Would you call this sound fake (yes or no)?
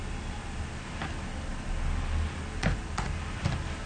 no